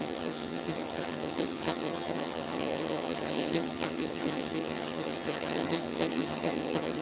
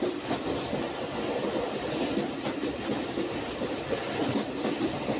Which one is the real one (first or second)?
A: second